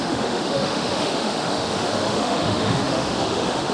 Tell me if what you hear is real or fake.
fake